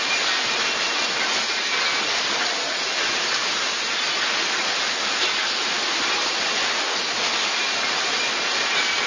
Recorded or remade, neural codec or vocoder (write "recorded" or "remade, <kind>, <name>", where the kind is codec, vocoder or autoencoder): recorded